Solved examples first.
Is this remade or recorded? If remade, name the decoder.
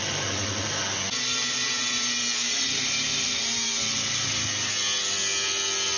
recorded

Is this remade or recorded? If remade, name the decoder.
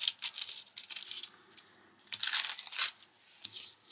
recorded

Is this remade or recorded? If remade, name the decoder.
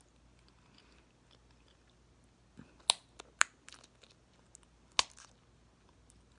recorded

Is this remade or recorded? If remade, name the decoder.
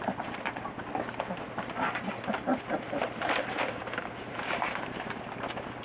recorded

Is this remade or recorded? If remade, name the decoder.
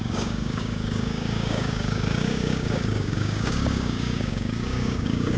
remade, codec, DAC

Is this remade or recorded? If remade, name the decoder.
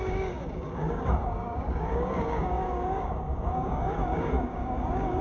remade, codec, DAC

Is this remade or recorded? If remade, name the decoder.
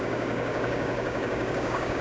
remade, codec, DAC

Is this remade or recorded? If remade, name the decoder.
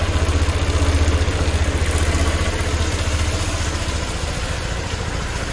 recorded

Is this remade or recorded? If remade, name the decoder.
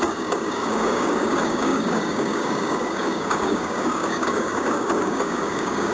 remade, codec, DAC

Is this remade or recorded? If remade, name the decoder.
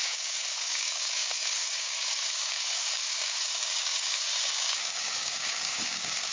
remade, codec, DAC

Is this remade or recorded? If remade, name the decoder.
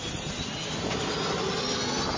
recorded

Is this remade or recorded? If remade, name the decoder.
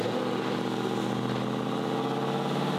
recorded